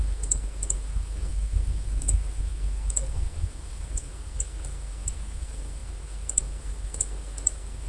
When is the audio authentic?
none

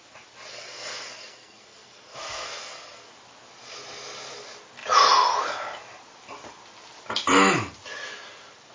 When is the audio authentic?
0.0-0.5; 3.1-8.7

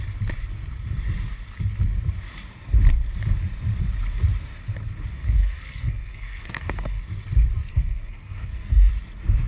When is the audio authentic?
0.0-5.2; 7.0-7.7; 8.9-9.5